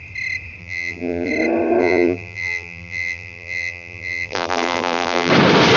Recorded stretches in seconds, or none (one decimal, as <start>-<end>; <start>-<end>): 0.0-0.6; 1.3-1.8; 5.3-5.8